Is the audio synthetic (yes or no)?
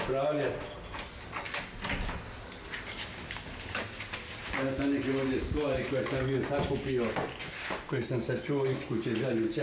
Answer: no